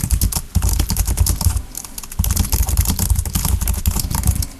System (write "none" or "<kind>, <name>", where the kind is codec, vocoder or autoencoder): none